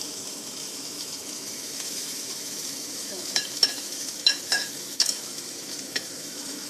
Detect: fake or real fake